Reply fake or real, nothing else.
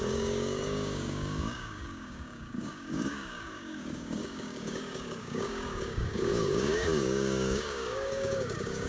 fake